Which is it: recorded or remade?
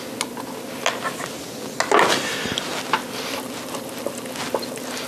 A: recorded